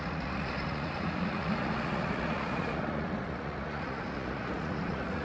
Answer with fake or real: fake